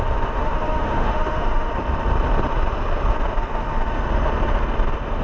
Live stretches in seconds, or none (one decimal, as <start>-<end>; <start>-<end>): 0.0-0.4; 1.7-5.2